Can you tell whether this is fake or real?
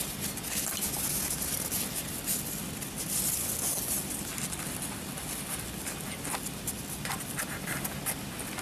real